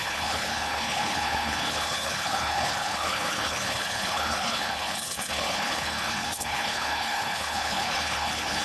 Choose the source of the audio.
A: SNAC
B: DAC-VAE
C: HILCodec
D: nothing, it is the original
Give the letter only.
C